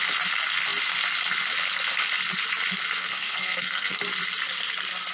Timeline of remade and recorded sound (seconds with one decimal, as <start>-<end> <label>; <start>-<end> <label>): 0.0-3.0 recorded; 3.0-4.0 remade; 4.0-5.1 recorded